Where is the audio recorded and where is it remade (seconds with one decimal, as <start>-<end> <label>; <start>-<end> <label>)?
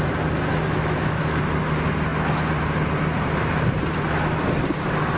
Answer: 0.0-0.6 recorded; 0.6-1.4 remade; 1.4-5.2 recorded